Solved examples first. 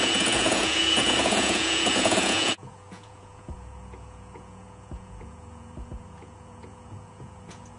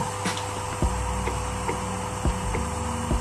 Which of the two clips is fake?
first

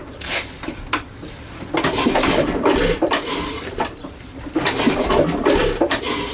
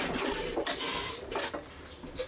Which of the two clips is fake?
first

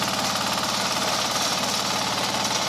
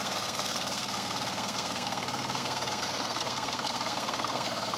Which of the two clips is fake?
second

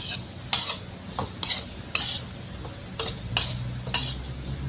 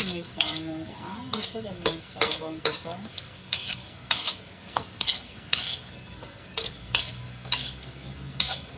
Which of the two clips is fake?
second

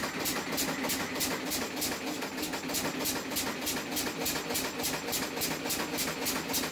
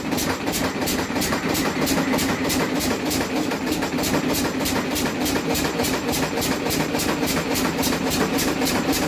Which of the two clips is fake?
second